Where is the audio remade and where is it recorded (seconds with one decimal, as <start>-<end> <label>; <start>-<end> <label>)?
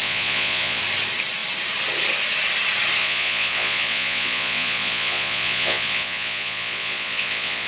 0.0-0.8 remade; 0.8-3.0 recorded; 3.0-7.7 remade